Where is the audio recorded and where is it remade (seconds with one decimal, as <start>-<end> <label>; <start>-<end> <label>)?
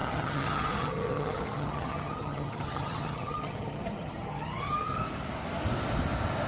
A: 0.0-5.0 remade; 5.0-6.5 recorded